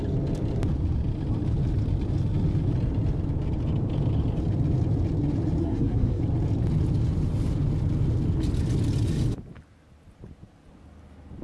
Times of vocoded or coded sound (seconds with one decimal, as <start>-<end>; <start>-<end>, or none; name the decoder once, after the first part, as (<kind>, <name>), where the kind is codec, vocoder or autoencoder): 5.6-6.2 (codec, SNAC)